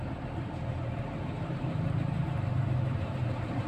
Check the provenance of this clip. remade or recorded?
remade